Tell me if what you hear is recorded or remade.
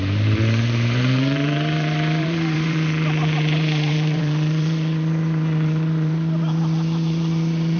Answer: remade